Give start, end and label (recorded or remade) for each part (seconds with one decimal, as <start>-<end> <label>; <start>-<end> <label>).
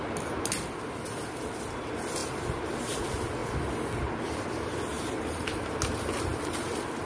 0.0-2.2 recorded; 2.2-3.0 remade; 3.0-4.9 recorded; 4.9-5.7 remade; 5.7-7.0 recorded